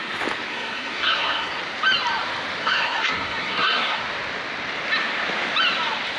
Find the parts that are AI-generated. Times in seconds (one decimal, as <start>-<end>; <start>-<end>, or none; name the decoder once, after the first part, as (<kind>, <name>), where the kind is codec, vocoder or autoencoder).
0.5-1.6 (codec, SNAC); 2.6-4.0